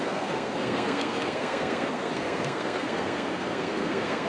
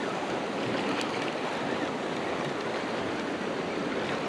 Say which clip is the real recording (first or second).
second